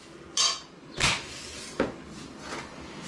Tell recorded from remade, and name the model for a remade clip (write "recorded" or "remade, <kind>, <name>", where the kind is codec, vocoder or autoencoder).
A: recorded